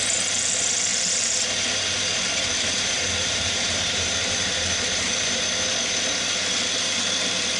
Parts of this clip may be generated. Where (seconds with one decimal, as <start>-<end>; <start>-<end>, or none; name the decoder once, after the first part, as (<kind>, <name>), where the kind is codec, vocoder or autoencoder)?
0.9-5.4 (vocoder, BigVGAN v2)